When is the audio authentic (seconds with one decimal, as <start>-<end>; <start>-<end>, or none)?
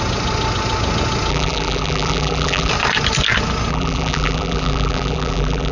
0.0-1.3; 2.7-3.7